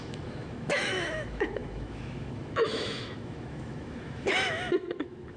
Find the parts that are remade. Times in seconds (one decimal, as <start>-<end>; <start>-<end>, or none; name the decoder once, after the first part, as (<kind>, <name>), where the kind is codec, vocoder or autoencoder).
0.0-5.4 (autoencoder, DAC-VAE)